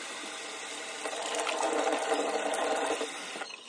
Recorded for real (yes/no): yes